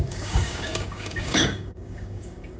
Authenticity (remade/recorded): remade